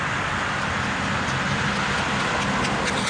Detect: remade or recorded recorded